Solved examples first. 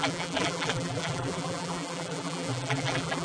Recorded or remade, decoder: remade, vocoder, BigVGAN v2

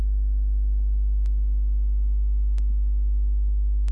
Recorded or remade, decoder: recorded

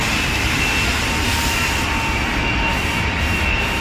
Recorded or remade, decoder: recorded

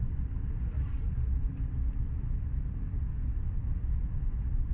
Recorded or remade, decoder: recorded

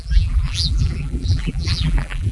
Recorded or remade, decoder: remade, vocoder, BigVGAN v2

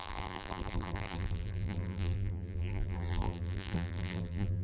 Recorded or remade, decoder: remade, vocoder, BigVGAN v2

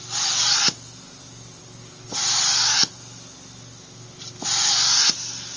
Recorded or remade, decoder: recorded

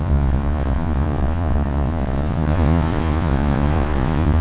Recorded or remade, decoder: remade, vocoder, Vocos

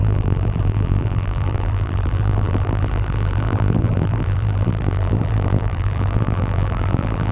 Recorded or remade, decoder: remade, vocoder, BigVGAN v2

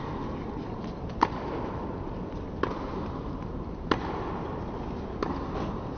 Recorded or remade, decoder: remade, vocoder, BigVGAN v2